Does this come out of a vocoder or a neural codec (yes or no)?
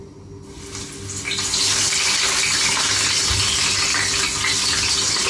no